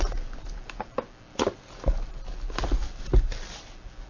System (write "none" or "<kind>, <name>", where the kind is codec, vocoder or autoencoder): none